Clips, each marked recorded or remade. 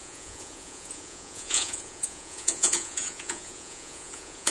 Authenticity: remade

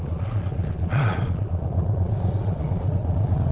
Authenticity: remade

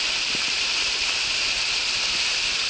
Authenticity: recorded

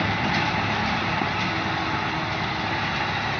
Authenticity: recorded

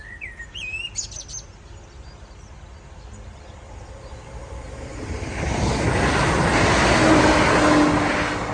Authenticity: recorded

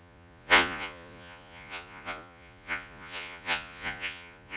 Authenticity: remade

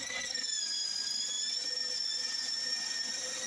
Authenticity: recorded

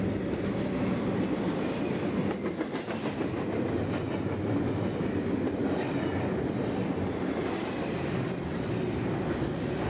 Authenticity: recorded